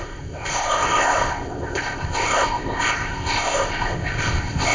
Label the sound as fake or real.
fake